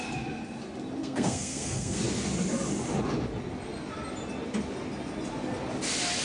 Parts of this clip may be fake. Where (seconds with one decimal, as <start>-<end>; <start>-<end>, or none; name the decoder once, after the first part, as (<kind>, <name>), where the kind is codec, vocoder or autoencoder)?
1.0-2.0 (codec, SNAC)